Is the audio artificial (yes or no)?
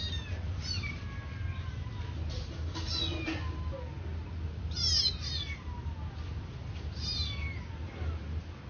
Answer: no